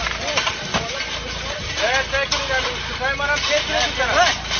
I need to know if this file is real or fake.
real